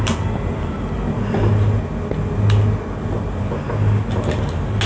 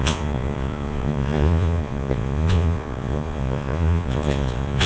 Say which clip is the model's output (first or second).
second